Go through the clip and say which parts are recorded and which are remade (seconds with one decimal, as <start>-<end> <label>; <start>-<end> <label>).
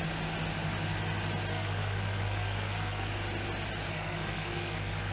0.0-1.5 recorded; 1.5-3.1 remade; 3.1-3.9 recorded; 3.9-5.1 remade